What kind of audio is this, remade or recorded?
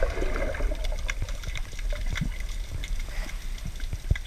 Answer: recorded